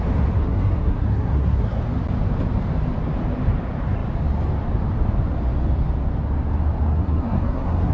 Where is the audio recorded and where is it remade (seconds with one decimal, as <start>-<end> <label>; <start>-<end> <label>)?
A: 0.0-0.4 recorded; 0.4-1.8 remade; 1.8-6.9 recorded; 6.9-7.9 remade